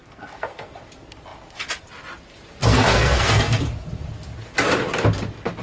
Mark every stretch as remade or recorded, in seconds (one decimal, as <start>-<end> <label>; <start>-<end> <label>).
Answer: 0.0-0.8 remade; 0.8-2.7 recorded; 2.7-3.6 remade; 3.6-5.6 recorded